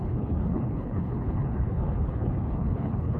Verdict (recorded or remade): remade